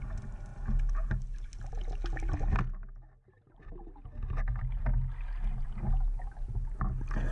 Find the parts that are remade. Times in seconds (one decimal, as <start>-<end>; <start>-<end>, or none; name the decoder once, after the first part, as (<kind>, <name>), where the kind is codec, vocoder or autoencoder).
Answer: none